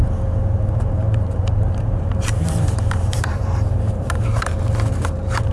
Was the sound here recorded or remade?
remade